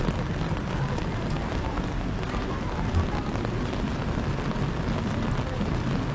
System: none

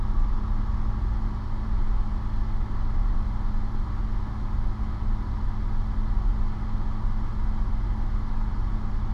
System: none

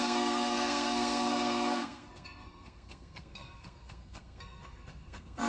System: codec, SNAC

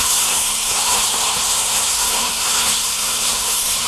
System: codec, SNAC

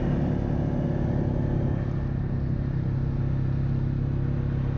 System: none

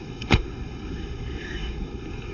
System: codec, SNAC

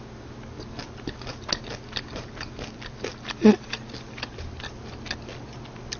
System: none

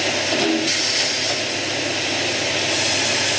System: none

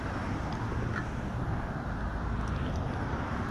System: none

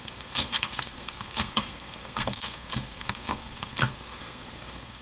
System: codec, SNAC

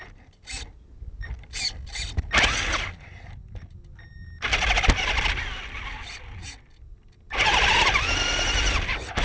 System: none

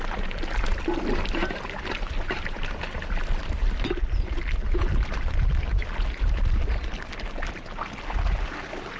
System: none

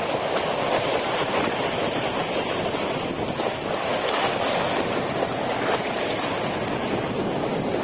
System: none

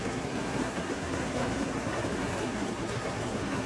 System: codec, SNAC